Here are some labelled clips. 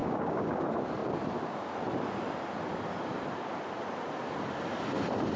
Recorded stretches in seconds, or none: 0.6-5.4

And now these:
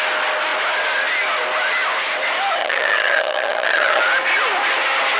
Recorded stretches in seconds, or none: 0.0-2.6; 4.0-5.2

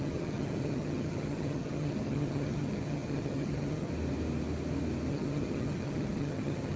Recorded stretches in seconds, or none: 3.9-5.1